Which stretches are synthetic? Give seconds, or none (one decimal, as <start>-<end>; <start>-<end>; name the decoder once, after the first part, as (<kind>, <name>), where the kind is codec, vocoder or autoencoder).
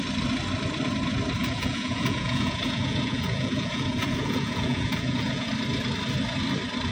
1.4-5.5 (vocoder, Vocos)